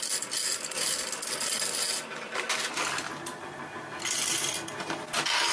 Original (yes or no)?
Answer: yes